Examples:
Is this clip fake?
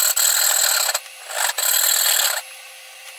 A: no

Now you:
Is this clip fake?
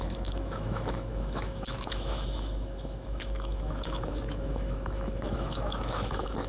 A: yes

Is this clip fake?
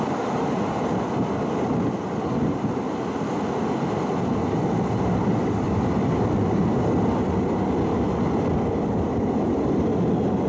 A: no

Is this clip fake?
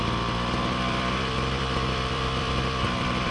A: yes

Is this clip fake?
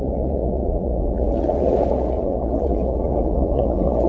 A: yes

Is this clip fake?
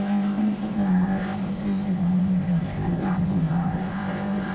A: yes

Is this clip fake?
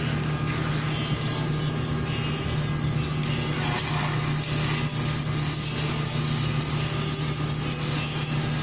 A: no